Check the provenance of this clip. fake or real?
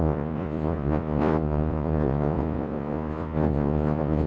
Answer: fake